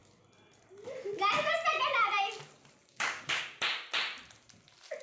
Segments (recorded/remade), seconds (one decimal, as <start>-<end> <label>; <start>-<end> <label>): 0.0-2.9 recorded; 2.9-3.6 remade; 3.6-5.0 recorded